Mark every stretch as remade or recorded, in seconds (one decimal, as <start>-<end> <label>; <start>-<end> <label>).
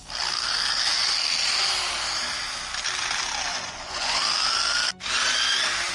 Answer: 0.0-3.5 recorded; 3.5-4.2 remade; 4.2-5.9 recorded